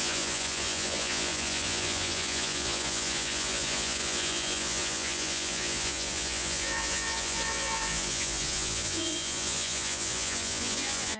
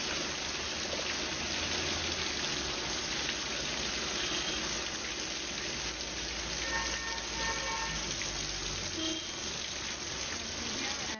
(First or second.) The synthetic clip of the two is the first